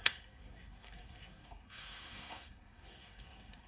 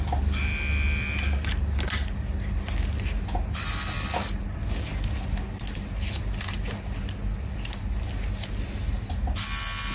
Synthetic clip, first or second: first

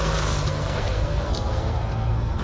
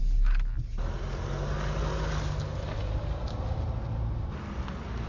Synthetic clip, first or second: first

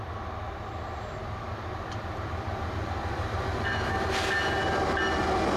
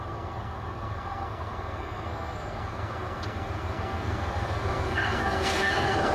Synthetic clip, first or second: second